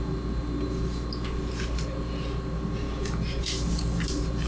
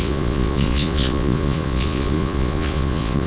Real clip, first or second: first